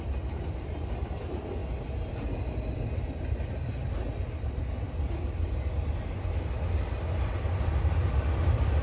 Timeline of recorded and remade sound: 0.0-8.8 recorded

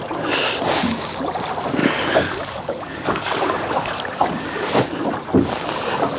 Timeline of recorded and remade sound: 0.0-1.8 recorded; 1.8-4.0 remade; 4.0-6.2 recorded

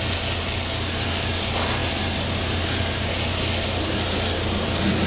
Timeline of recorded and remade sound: 0.0-5.1 recorded